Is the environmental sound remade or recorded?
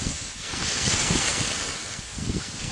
remade